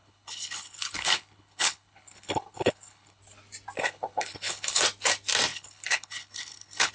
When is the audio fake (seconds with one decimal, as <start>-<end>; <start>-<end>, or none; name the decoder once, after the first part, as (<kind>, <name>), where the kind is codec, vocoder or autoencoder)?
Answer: 0.0-3.2 (codec, HILCodec); 3.8-4.8; 5.5-6.9